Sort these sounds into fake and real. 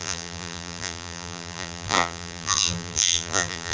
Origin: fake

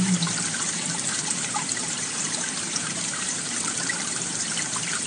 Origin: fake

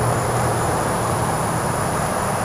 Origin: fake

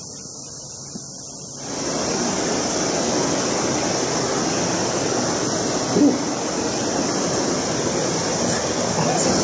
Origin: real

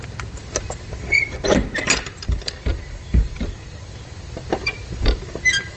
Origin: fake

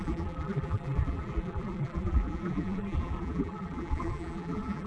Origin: fake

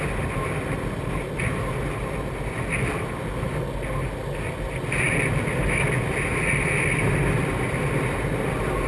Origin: real